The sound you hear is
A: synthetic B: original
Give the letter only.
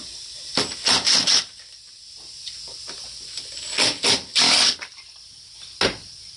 B